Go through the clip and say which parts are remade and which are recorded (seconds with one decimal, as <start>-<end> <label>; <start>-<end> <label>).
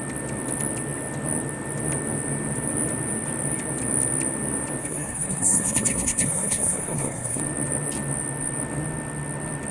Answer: 0.0-4.8 recorded; 4.8-7.4 remade; 7.4-9.7 recorded